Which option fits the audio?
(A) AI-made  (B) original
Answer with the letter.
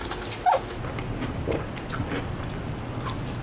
B